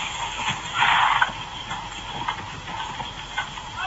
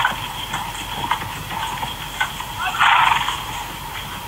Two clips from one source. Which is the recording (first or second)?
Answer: first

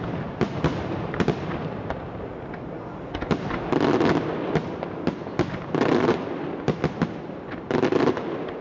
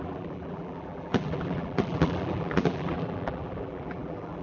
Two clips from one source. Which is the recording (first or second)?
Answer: first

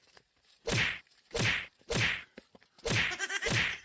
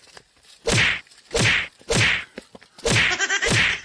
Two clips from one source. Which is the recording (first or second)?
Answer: second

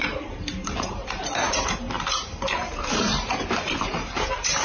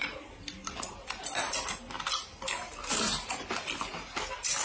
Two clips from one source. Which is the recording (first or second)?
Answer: second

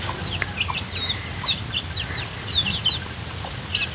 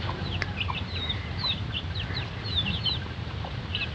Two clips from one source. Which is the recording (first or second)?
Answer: first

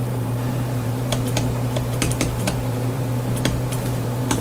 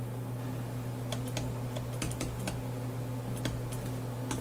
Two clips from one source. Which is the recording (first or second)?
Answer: second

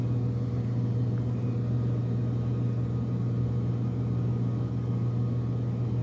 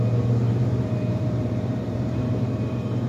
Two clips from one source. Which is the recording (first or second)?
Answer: first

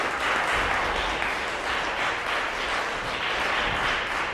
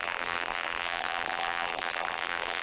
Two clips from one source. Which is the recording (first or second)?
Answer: first